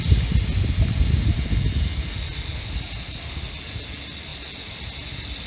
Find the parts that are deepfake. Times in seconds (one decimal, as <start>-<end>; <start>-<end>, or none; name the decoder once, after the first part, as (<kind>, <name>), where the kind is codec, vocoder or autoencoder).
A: 0.0-5.5 (vocoder, BigVGAN v2)